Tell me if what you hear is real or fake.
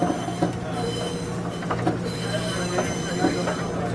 real